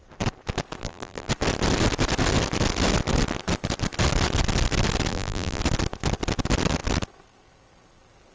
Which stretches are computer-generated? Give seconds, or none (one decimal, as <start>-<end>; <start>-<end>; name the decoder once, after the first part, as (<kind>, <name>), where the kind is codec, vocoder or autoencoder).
0.8-1.3 (vocoder, BigVGAN v2); 5.1-5.6